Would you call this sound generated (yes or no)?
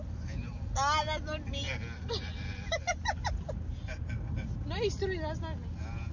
no